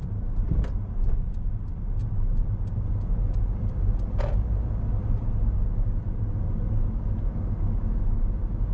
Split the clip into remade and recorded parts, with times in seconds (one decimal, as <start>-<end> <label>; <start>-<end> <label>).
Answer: 0.0-2.0 recorded; 2.0-4.6 remade; 4.6-8.7 recorded